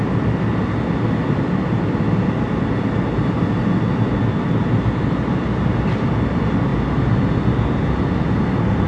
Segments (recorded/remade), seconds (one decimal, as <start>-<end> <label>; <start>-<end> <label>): 0.0-8.9 recorded